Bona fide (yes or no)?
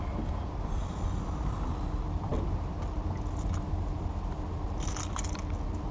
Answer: yes